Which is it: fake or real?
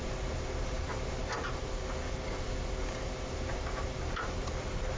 real